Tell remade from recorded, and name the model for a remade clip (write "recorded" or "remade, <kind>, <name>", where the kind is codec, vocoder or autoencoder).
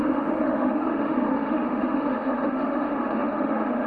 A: remade, autoencoder, DAC-VAE